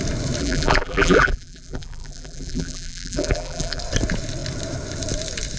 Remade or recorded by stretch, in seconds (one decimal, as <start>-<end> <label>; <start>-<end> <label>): 0.0-0.4 recorded; 0.4-3.8 remade; 3.8-5.6 recorded